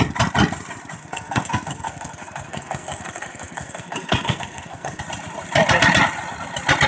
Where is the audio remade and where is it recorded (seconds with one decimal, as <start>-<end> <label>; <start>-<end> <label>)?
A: 0.0-1.0 recorded; 1.0-5.0 remade; 5.0-6.9 recorded